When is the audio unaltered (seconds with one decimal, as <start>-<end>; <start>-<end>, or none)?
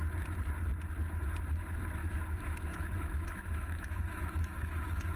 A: 0.0-2.0